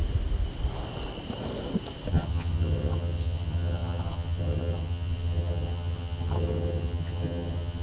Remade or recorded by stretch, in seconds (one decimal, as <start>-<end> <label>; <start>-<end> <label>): 0.0-2.1 recorded; 2.1-7.8 remade